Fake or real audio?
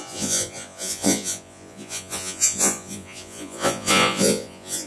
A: fake